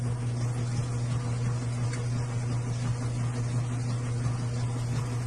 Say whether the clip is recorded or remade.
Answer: recorded